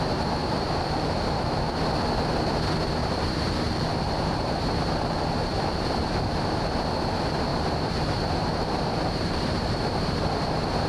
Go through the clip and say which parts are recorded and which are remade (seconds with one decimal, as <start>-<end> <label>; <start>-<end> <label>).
0.0-0.4 recorded; 0.4-1.7 remade; 1.7-3.0 recorded; 3.0-6.6 remade; 6.6-7.5 recorded; 7.5-10.0 remade; 10.0-10.9 recorded

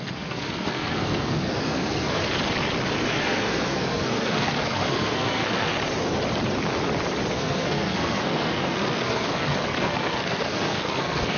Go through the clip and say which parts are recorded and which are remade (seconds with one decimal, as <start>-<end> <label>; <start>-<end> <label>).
0.0-2.2 remade; 2.2-3.1 recorded; 3.1-5.7 remade; 5.7-7.3 recorded; 7.3-11.4 remade

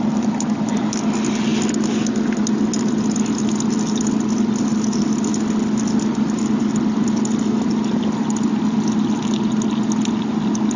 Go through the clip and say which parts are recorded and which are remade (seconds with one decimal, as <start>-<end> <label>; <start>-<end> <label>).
0.0-10.8 recorded

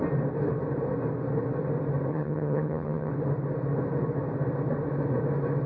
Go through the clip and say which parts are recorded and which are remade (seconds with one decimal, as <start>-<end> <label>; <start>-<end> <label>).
0.0-2.1 recorded; 2.1-3.1 remade; 3.1-5.7 recorded

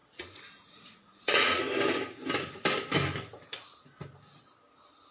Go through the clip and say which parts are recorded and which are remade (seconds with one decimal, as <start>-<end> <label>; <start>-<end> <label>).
0.0-1.6 remade; 1.6-5.1 recorded

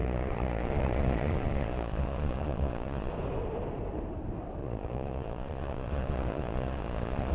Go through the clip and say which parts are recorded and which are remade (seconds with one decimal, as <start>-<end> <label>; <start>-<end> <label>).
0.0-3.1 remade; 3.1-4.6 recorded; 4.6-7.3 remade

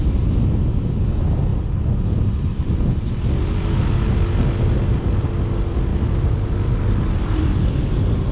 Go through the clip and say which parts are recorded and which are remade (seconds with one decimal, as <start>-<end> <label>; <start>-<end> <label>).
0.0-5.9 recorded; 5.9-7.4 remade; 7.4-8.3 recorded